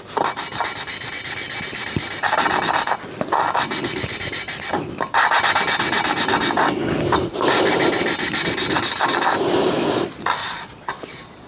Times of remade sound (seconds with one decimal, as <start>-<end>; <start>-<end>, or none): 10.4-11.5